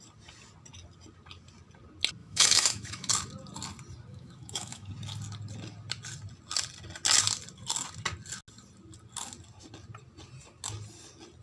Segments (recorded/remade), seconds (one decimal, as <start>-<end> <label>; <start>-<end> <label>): 0.0-2.2 recorded; 2.2-3.1 remade; 3.1-4.1 recorded; 4.1-4.9 remade; 4.9-11.4 recorded